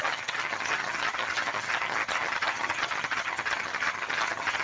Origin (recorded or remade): remade